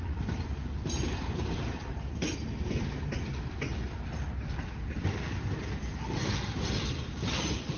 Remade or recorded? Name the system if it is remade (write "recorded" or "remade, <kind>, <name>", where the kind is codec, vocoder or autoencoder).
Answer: remade, vocoder, BigVGAN v2